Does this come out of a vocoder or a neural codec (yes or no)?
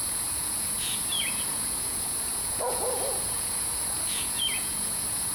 yes